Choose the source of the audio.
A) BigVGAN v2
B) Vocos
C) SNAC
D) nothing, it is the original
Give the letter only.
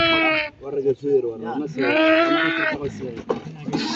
D